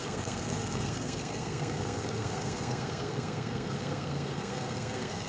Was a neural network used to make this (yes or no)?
yes